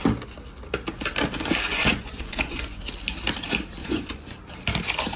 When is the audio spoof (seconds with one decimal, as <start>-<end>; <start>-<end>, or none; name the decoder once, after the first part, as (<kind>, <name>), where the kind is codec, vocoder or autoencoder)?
1.7-2.8 (vocoder, Vocos); 3.8-4.3